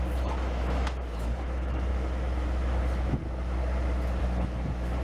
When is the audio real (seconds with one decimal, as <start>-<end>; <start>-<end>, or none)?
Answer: 3.2-4.2